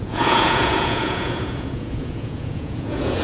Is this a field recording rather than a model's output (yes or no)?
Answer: no